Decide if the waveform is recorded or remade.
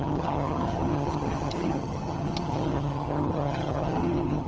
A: remade